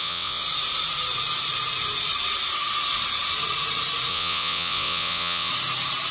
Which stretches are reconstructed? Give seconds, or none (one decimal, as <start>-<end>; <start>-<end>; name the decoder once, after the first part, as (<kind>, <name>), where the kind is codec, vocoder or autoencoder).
0.0-0.4 (vocoder, WaveNeXt); 4.1-5.5